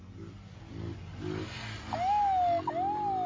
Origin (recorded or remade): recorded